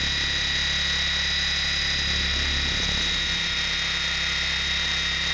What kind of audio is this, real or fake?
real